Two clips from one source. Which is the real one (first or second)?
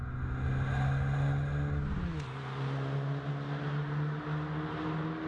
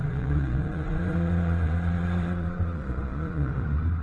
first